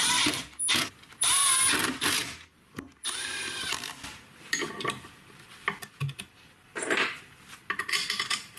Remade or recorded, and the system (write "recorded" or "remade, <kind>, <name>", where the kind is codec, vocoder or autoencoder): remade, vocoder, BigVGAN v2